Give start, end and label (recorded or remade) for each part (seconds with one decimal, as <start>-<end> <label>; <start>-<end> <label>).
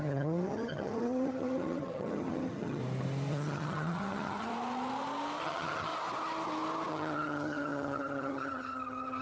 0.0-2.8 remade; 2.8-3.3 recorded; 3.3-4.5 remade; 4.5-5.4 recorded; 5.4-5.9 remade; 5.9-6.9 recorded; 6.9-9.2 remade